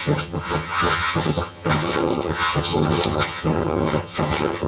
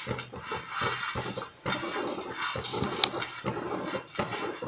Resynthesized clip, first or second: first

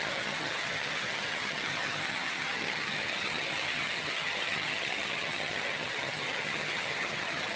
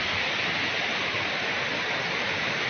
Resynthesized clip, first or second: first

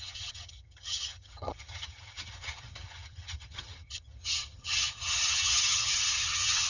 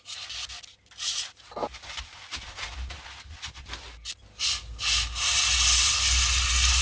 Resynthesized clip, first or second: first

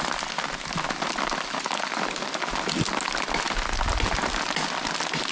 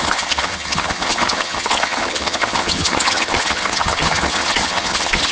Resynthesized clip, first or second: second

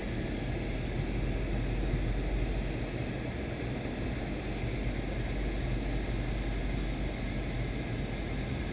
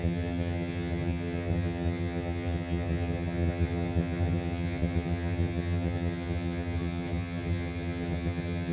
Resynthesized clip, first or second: second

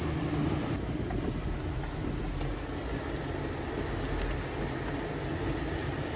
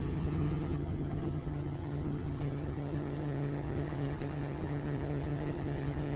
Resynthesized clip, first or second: second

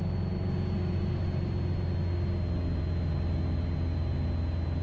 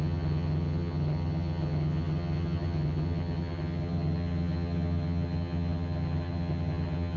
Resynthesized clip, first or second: second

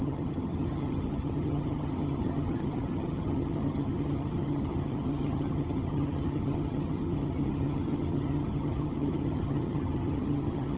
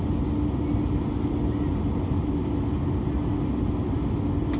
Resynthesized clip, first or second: first